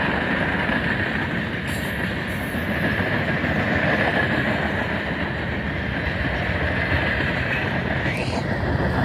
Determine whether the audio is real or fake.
real